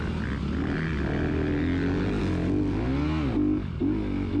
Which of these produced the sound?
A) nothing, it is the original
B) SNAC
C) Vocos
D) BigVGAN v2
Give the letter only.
A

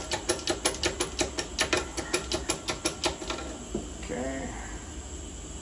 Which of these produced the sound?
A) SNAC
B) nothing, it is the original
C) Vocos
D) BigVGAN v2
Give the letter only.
B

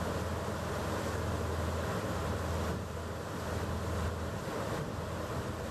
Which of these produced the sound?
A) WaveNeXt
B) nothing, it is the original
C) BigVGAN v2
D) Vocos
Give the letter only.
C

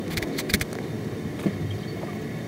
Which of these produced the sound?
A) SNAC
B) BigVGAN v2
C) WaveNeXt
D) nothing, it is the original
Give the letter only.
D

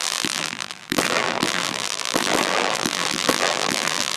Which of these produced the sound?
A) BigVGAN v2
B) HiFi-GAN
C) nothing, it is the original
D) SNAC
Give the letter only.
A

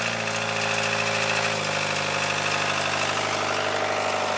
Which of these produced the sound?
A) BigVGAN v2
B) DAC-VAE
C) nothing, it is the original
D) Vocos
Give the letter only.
C